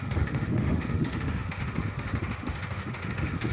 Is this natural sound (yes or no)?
no